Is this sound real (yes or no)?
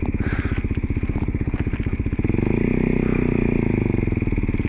yes